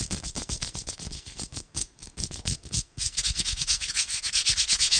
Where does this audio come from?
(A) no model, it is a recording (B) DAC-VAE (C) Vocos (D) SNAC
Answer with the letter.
D